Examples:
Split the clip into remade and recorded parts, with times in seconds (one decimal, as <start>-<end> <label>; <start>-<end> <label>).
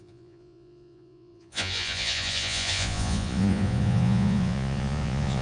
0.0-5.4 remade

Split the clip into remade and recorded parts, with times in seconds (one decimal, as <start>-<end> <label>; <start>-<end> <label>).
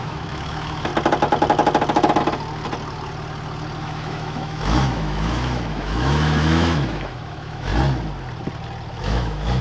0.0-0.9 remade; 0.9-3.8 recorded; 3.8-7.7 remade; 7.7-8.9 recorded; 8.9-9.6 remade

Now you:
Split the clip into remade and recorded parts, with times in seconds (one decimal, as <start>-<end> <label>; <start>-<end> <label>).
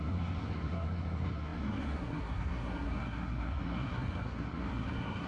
0.0-5.3 remade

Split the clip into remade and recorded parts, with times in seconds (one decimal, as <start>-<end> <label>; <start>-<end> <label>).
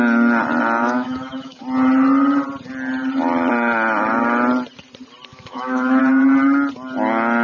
0.0-0.8 recorded; 0.8-1.6 remade; 1.6-5.3 recorded; 5.3-6.0 remade; 6.0-7.4 recorded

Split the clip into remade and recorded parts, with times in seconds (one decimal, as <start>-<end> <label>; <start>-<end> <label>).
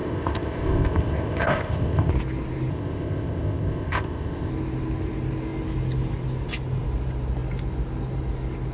0.0-2.1 remade; 2.1-2.7 recorded; 2.7-4.5 remade; 4.5-8.7 recorded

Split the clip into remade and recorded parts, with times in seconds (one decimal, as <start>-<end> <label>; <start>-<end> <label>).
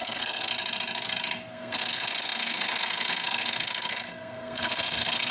0.0-0.5 remade; 0.5-1.5 recorded; 1.5-5.3 remade